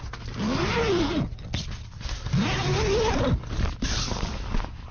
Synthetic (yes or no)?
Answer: no